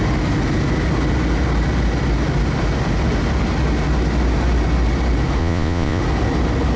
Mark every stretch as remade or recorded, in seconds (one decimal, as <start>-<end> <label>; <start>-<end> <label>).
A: 0.0-5.4 recorded; 5.4-6.0 remade; 6.0-6.8 recorded

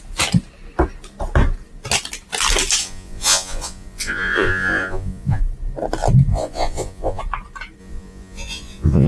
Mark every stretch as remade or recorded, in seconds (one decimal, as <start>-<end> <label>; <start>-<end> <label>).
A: 0.0-2.8 recorded; 2.8-5.4 remade; 5.4-6.3 recorded; 6.3-7.2 remade; 7.2-7.8 recorded; 7.8-9.1 remade

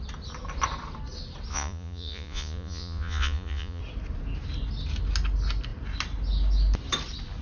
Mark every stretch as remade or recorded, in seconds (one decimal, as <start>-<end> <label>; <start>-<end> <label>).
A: 0.0-1.5 recorded; 1.5-3.8 remade; 3.8-7.4 recorded

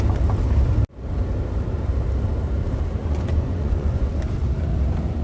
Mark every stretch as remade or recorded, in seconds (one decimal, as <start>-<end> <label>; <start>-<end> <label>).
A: 0.0-3.0 recorded; 3.0-4.2 remade; 4.2-5.2 recorded

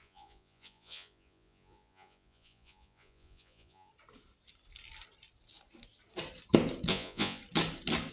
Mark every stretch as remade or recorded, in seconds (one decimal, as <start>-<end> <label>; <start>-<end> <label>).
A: 0.0-3.9 remade; 3.9-6.9 recorded; 6.9-7.4 remade; 7.4-8.1 recorded

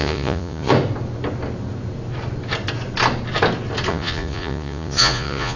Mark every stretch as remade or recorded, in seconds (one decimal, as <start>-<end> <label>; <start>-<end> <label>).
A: 0.0-0.7 remade; 0.7-3.9 recorded; 3.9-5.6 remade

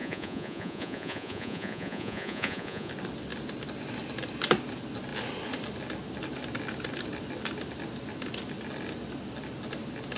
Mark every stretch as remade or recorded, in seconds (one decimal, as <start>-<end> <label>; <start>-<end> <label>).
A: 0.0-2.9 remade; 2.9-10.2 recorded